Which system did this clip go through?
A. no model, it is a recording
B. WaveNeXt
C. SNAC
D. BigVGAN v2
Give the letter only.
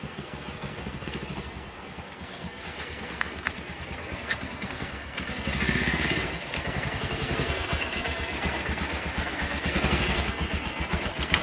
C